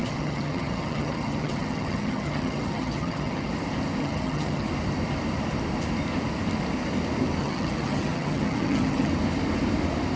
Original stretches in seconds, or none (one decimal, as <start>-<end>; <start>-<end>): 3.5-4.0; 4.7-7.4; 9.1-10.2